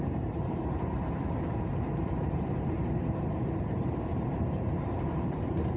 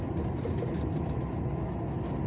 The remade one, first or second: first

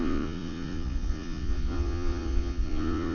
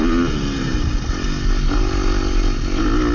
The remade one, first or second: first